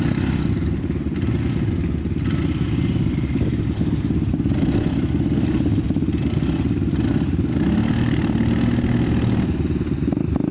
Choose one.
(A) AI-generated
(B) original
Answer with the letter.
B